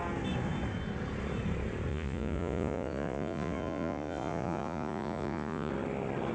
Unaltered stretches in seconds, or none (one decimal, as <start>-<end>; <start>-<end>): 0.0-1.9; 5.7-6.3